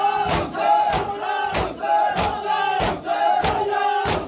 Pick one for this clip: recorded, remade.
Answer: recorded